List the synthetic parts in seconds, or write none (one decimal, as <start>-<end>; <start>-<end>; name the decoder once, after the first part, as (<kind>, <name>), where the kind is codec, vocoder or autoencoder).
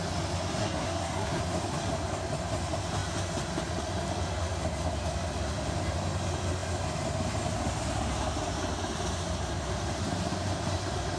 0.6-1.4 (codec, SNAC)